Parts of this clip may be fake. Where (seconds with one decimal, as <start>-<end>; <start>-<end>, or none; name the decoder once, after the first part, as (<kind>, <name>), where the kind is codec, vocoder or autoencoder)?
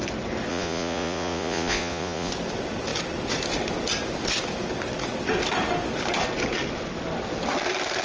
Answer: 0.5-2.3 (vocoder, Vocos)